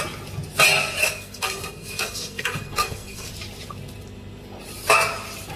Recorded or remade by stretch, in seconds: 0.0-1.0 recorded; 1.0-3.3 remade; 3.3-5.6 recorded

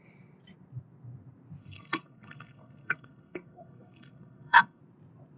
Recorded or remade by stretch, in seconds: 0.0-1.6 recorded; 1.6-4.8 remade; 4.8-5.4 recorded